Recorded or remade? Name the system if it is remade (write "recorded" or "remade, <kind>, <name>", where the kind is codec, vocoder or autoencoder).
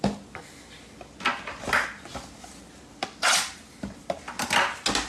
recorded